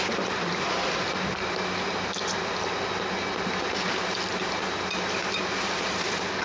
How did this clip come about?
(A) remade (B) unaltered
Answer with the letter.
B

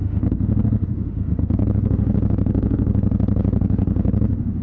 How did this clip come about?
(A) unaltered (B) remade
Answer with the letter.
B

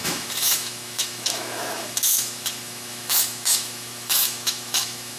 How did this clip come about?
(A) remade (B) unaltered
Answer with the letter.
A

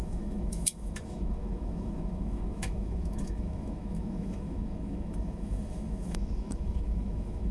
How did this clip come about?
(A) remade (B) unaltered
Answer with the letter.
A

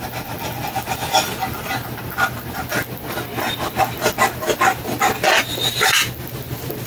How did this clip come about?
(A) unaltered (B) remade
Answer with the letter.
A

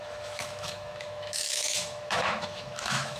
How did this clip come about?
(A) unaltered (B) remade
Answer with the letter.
B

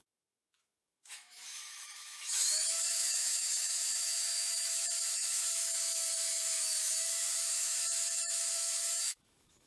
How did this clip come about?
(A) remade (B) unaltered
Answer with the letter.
A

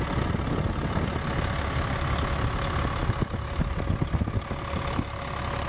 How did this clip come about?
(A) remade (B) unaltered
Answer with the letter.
B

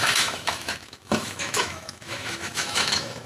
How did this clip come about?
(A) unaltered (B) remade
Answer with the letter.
B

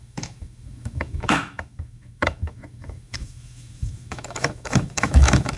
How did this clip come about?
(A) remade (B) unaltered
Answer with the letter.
A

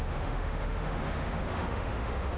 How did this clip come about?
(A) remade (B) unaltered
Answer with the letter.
A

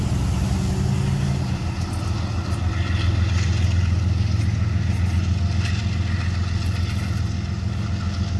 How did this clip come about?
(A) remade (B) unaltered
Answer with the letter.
B